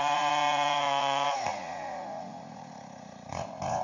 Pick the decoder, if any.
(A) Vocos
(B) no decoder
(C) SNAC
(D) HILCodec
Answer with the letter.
A